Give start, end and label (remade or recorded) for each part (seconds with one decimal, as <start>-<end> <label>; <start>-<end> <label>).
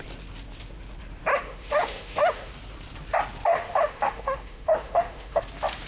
0.0-1.3 recorded; 1.3-2.5 remade; 2.5-3.5 recorded; 3.5-5.4 remade; 5.4-5.9 recorded